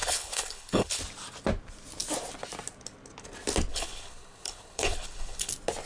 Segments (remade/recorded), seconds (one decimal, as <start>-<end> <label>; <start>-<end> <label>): 0.0-1.0 remade; 1.0-3.7 recorded; 3.7-5.5 remade; 5.5-5.9 recorded